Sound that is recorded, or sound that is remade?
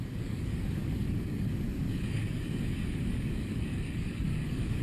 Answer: remade